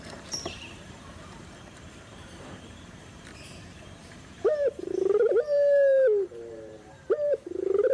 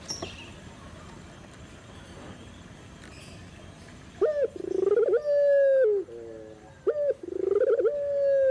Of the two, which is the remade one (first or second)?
first